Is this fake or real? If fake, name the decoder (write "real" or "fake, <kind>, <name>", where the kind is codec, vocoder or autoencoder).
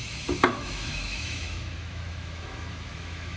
fake, autoencoder, DAC-VAE